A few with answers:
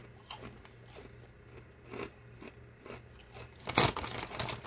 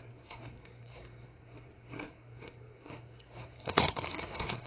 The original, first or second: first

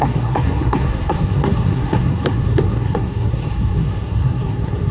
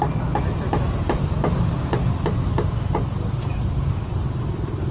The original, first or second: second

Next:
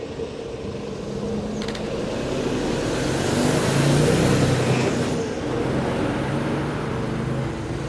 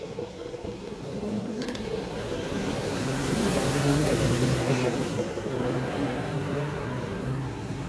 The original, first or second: first